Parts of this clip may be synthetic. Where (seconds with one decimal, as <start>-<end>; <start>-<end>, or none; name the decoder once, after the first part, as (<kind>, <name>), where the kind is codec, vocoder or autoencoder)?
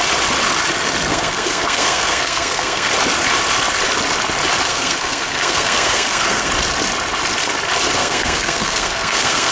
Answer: 1.1-2.9 (codec, SNAC); 4.7-6.5; 8.0-9.5